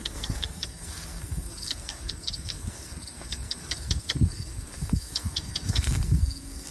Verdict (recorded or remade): remade